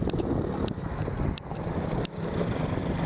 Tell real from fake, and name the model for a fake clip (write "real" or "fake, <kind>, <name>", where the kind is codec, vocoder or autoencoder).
real